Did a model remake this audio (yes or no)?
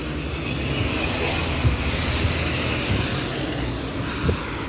no